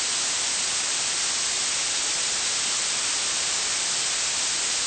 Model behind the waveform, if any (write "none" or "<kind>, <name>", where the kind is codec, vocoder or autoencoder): none